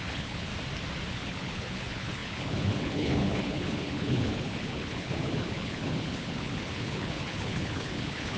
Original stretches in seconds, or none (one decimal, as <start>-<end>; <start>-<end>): 0.5-1.1

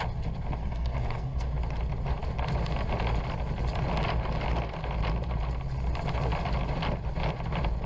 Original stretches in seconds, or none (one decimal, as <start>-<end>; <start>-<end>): 0.0-0.6; 1.5-7.9

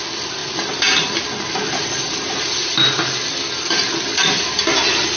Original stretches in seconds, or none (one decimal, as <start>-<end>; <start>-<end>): 0.4-1.2; 2.6-5.2

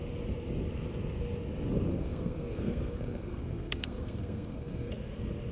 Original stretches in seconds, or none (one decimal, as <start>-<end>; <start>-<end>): 0.0-1.9; 4.9-5.5

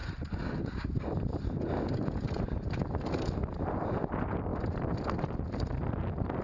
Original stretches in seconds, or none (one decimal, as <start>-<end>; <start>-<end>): 0.0-6.4

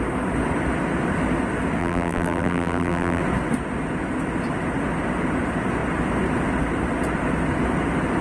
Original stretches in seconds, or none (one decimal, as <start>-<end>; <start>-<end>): 0.0-1.8; 3.2-8.2

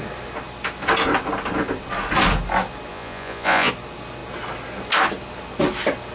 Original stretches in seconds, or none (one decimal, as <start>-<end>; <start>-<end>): 0.0-2.9; 3.7-6.1

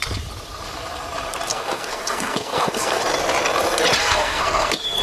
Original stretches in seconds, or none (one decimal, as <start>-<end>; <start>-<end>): 0.0-1.5; 3.0-4.0